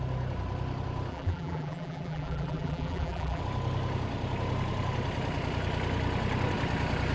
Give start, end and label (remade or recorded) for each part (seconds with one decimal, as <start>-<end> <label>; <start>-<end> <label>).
0.0-1.1 recorded; 1.1-3.4 remade; 3.4-7.1 recorded